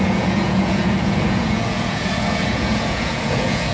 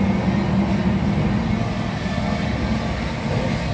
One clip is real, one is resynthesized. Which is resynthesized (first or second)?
first